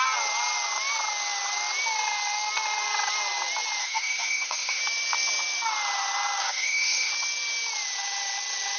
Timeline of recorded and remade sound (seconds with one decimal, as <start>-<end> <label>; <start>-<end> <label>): 0.0-3.8 recorded; 3.8-4.8 remade; 4.8-6.4 recorded; 6.4-7.1 remade; 7.1-8.8 recorded